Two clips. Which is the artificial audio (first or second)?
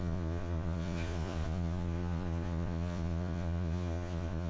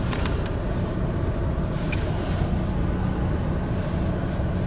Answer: first